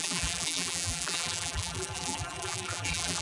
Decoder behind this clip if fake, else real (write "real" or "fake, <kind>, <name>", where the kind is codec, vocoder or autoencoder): fake, vocoder, BigVGAN v2